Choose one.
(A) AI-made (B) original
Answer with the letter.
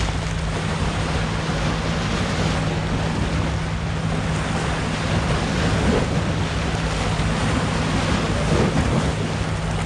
B